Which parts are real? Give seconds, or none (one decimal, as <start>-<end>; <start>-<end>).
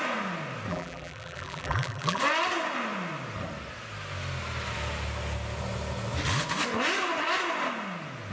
0.0-0.7; 2.2-8.3